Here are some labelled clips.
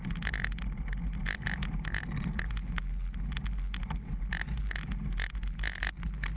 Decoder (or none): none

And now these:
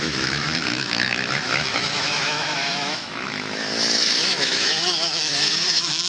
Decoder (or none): autoencoder, DAC-VAE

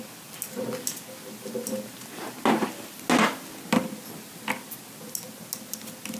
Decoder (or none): none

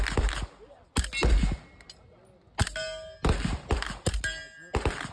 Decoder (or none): none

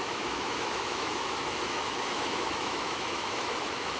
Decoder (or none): autoencoder, DAC-VAE